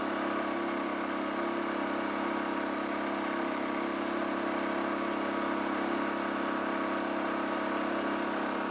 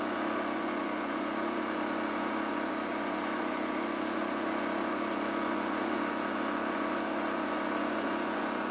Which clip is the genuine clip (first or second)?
first